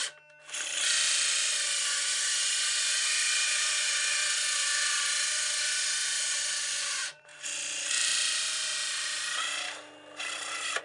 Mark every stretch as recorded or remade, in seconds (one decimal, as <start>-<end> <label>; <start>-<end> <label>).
0.0-1.8 recorded; 1.8-7.3 remade; 7.3-10.8 recorded